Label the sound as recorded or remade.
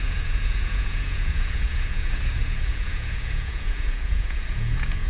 remade